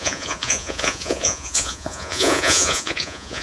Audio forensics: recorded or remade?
remade